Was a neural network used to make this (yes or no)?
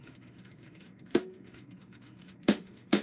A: yes